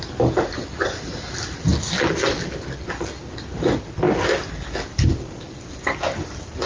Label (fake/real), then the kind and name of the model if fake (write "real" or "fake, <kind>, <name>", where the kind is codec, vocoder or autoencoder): real